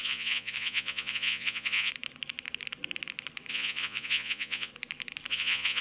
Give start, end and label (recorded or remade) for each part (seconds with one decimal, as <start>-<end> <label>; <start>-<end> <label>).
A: 0.0-1.9 remade; 1.9-3.5 recorded; 3.5-4.7 remade; 4.7-5.3 recorded; 5.3-5.8 remade